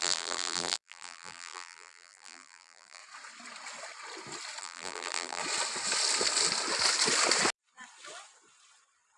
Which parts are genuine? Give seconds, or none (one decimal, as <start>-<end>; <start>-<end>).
3.0-4.6; 5.4-9.2